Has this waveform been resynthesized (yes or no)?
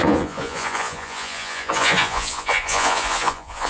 yes